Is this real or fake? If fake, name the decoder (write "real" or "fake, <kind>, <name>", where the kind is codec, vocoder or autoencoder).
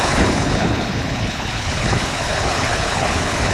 fake, codec, HILCodec